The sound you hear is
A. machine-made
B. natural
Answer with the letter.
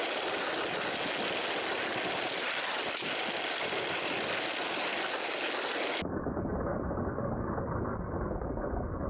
B